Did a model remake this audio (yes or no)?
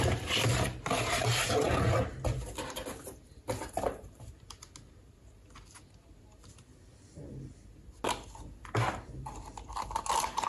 no